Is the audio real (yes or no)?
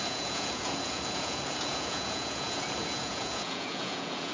no